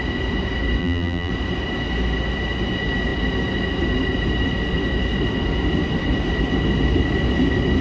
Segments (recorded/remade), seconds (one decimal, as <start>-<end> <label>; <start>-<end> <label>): 0.0-0.8 recorded; 0.8-1.3 remade; 1.3-7.8 recorded